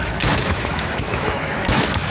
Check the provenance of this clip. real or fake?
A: fake